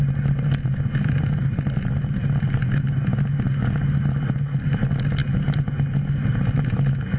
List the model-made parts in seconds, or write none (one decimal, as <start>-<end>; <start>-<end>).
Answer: none